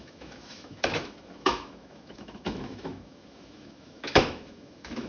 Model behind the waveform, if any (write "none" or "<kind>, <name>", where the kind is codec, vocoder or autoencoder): autoencoder, DAC-VAE